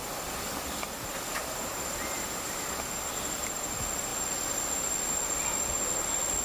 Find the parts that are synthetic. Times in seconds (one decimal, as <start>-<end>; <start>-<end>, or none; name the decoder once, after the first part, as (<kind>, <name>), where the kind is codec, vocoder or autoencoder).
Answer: none